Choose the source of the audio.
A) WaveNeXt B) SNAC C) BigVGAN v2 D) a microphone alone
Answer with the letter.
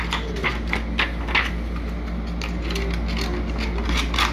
D